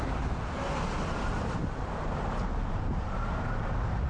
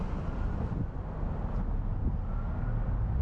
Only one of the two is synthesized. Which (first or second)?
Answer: first